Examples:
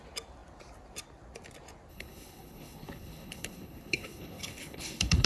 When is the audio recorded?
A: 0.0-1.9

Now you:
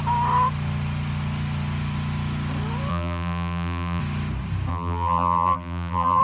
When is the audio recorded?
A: 0.0-2.9; 4.0-4.7

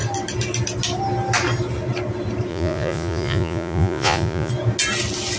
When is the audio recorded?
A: 0.0-2.5; 4.5-5.4

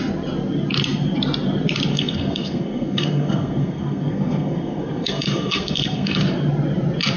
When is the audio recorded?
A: 0.0-1.9; 6.2-7.2

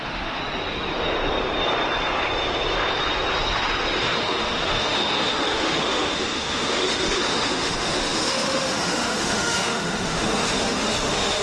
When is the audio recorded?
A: 0.4-4.0

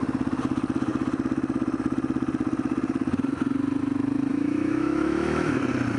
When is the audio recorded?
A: 0.0-4.3; 5.6-6.0

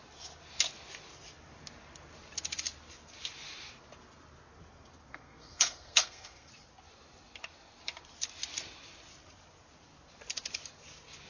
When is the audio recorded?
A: 0.0-5.1; 6.5-11.3

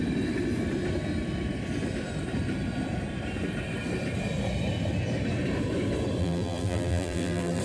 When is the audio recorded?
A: 0.0-6.2